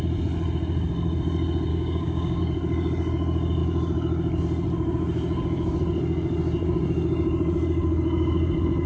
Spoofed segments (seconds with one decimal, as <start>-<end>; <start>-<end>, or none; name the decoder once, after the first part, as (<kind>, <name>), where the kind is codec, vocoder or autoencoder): 1.7-2.4 (codec, DAC)